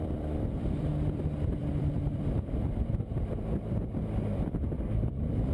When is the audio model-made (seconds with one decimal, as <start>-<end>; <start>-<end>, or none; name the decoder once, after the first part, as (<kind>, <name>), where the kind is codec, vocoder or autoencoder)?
0.0-5.5 (vocoder, BigVGAN v2)